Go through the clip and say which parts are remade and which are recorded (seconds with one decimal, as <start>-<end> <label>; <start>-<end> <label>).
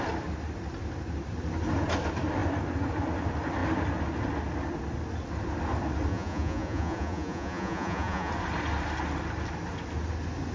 0.0-6.1 recorded; 6.1-8.3 remade; 8.3-10.5 recorded